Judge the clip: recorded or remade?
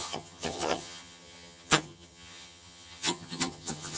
remade